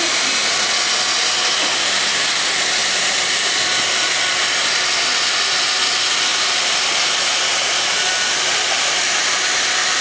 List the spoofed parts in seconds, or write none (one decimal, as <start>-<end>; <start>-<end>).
2.8-4.1; 6.3-10.0